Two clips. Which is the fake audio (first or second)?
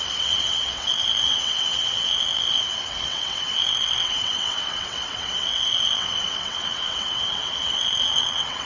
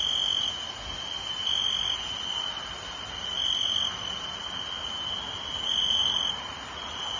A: first